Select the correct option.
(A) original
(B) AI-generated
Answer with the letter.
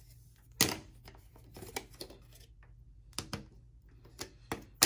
A